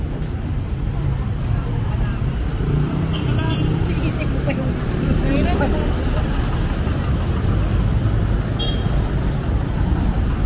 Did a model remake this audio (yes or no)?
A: no